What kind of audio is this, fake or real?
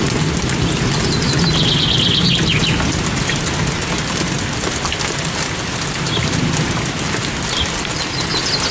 real